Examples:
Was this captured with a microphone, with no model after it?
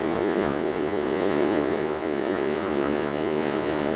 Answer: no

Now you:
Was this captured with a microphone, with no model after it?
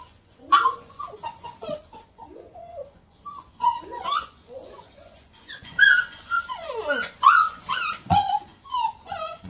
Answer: no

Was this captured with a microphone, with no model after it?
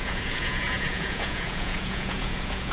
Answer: no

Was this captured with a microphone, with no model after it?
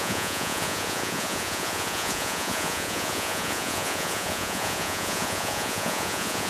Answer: no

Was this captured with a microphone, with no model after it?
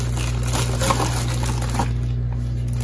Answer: yes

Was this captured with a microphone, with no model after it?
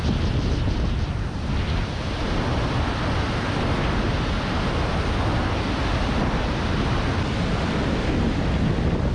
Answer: yes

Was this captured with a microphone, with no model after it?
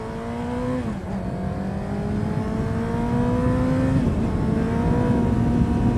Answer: yes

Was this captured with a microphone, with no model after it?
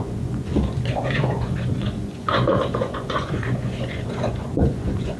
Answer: no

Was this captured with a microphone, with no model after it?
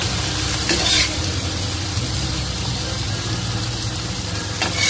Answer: yes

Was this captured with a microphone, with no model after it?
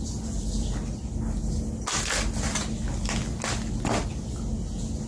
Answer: yes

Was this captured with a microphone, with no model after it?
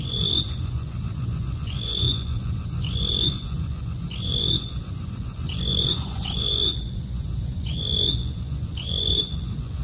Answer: no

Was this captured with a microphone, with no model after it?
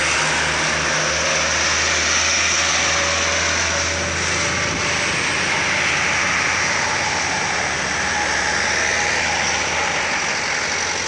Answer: yes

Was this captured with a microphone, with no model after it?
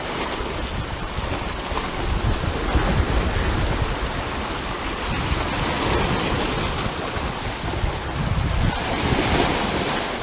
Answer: yes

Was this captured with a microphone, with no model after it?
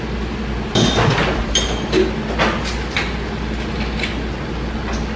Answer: yes